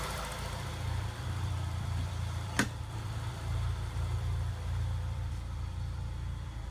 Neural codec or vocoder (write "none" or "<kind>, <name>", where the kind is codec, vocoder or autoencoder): vocoder, BigVGAN v2